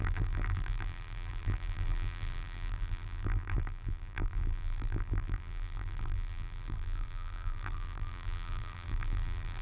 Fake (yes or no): yes